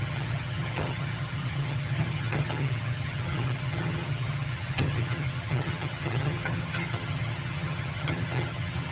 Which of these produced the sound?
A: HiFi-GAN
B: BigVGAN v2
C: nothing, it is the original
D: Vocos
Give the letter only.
A